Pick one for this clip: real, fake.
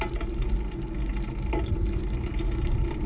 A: real